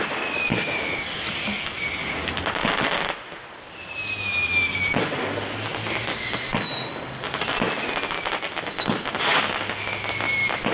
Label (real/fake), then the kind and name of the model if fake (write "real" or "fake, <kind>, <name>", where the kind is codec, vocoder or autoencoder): real